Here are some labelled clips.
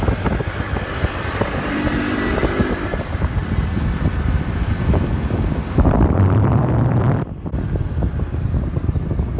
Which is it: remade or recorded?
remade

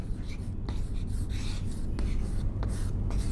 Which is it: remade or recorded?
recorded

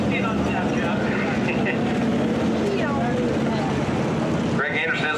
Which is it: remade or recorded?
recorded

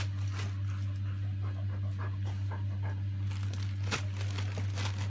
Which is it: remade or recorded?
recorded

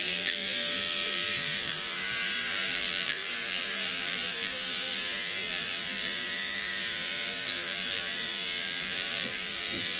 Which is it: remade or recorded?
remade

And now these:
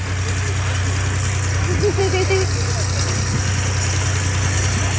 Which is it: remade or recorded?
recorded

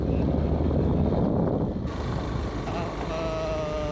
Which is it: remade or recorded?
recorded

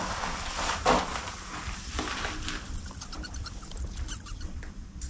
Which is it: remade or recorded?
recorded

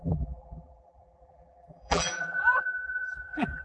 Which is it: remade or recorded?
remade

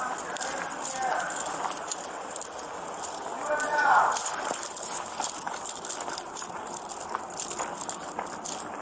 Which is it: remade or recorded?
recorded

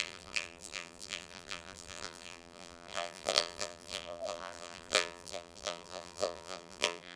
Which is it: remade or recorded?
remade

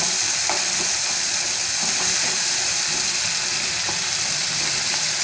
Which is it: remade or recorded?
remade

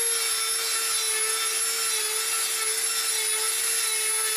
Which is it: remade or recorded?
recorded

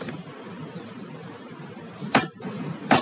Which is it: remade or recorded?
remade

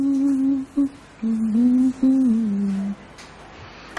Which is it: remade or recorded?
recorded